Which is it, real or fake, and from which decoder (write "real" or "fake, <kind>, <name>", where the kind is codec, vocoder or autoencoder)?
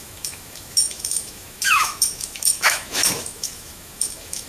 fake, autoencoder, DAC-VAE